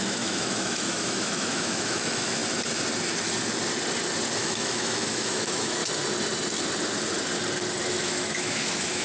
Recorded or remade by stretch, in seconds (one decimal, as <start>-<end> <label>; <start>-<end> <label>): 0.0-2.4 remade; 2.4-4.4 recorded; 4.4-5.8 remade; 5.8-7.9 recorded; 7.9-9.0 remade